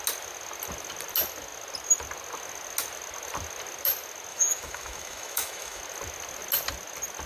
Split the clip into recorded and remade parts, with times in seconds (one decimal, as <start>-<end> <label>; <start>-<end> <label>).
0.0-4.3 recorded; 4.3-5.8 remade; 5.8-7.3 recorded